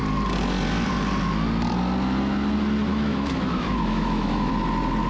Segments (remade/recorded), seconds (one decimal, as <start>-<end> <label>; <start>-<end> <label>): 0.0-2.9 recorded; 2.9-4.5 remade; 4.5-5.1 recorded